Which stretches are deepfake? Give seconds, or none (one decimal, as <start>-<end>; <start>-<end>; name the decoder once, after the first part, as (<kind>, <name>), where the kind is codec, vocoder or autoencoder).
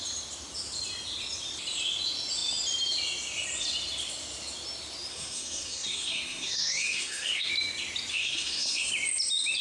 5.1-7.5 (codec, SNAC); 8.1-8.9